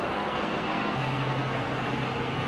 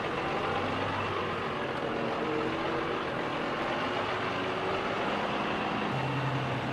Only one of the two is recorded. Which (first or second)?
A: second